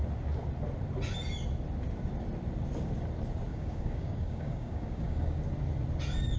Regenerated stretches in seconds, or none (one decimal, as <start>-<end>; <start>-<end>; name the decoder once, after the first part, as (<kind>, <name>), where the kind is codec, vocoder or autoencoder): 3.5-5.4 (codec, DAC)